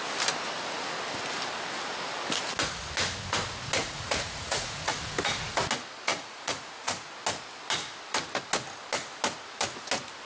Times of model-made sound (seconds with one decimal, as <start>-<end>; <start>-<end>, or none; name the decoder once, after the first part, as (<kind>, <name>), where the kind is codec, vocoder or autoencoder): 3.8-5.0 (vocoder, Vocos); 6.1-7.1